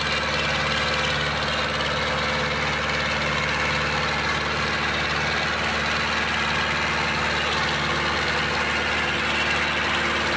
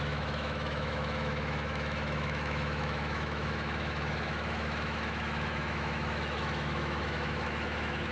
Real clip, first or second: first